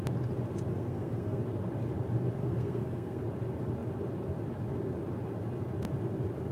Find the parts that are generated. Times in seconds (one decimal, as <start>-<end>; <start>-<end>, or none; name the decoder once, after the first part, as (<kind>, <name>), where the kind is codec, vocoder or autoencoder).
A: 0.7-1.4 (codec, SNAC); 2.4-3.2

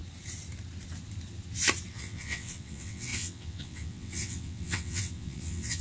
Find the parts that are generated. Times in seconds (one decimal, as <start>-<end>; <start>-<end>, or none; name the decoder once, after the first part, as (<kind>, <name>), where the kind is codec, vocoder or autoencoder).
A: 1.9-5.8 (vocoder, WaveNeXt)